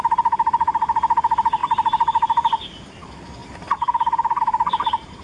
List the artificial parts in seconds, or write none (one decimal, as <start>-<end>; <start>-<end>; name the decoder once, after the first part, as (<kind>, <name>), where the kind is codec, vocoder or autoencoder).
1.6-2.9 (vocoder, BigVGAN v2); 3.4-4.4

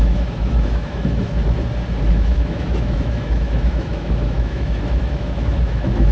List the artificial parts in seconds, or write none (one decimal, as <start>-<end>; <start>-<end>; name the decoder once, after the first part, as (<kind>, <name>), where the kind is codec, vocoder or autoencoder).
0.0-1.4 (autoencoder, DAC-VAE); 2.1-6.1